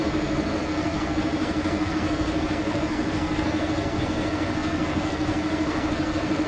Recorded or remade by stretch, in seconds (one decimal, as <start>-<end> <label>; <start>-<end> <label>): 0.0-6.5 remade